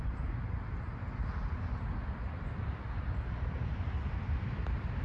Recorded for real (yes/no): yes